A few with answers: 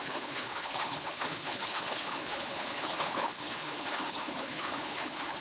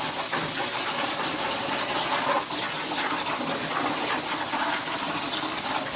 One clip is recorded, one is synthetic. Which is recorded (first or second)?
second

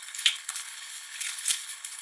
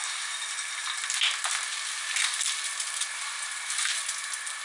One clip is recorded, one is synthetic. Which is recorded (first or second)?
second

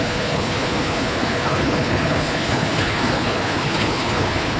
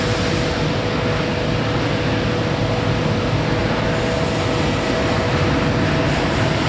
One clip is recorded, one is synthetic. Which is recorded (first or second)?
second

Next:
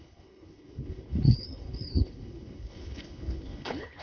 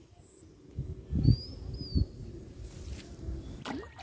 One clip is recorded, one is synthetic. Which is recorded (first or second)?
second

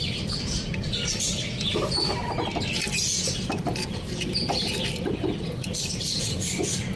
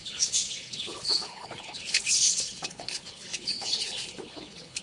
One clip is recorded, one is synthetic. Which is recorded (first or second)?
first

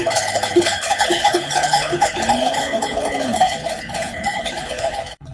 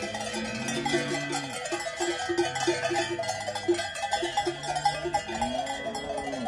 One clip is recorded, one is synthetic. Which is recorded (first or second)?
second